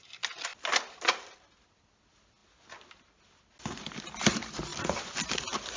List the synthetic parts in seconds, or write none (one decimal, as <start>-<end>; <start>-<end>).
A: none